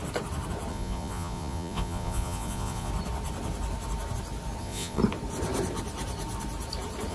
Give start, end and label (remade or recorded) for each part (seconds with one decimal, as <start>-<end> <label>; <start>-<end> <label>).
0.0-0.7 recorded; 0.7-2.9 remade; 2.9-4.6 recorded; 4.6-5.0 remade; 5.0-7.1 recorded